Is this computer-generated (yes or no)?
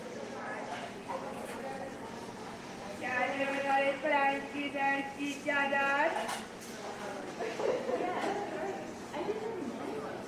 no